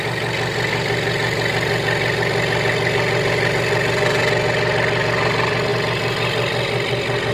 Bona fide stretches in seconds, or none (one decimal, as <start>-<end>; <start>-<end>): 0.0-7.3